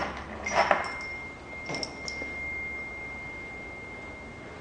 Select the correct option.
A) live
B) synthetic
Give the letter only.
A